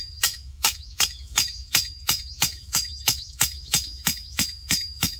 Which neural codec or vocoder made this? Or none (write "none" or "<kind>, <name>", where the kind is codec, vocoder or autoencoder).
autoencoder, DAC-VAE